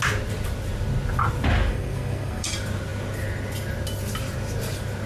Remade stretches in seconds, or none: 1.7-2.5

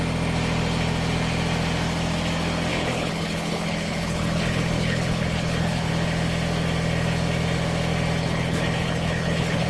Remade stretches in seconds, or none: 2.7-5.9; 8.2-9.7

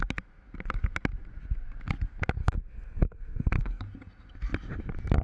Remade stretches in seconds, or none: 2.4-3.8

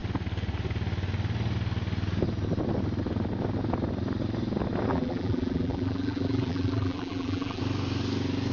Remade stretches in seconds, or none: 4.9-7.6

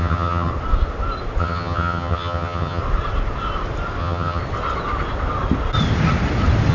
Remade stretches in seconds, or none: 0.0-0.5; 1.4-2.8; 4.0-4.4